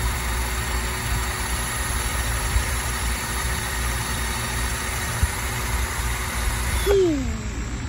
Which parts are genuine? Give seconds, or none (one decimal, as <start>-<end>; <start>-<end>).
0.0-2.1; 6.0-7.9